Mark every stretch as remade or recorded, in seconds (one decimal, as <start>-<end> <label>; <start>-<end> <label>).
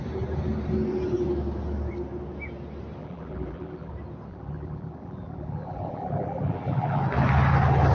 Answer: 0.0-3.0 recorded; 3.0-3.9 remade; 3.9-4.3 recorded; 4.3-7.0 remade; 7.0-7.9 recorded